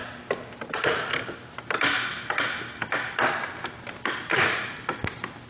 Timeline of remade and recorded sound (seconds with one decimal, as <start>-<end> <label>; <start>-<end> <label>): 0.0-5.5 recorded

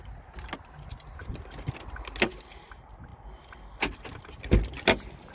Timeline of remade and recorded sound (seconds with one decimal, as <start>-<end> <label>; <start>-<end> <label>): 0.0-5.3 recorded